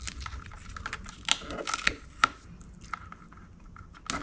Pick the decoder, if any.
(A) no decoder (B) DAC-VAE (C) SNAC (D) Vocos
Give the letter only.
A